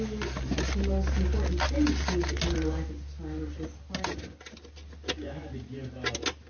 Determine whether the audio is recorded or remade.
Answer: recorded